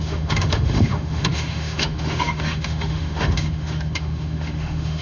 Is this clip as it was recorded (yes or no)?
no